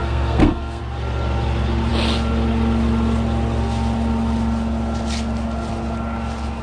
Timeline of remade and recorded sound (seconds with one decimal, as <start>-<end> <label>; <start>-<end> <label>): 0.0-0.8 remade; 0.8-6.6 recorded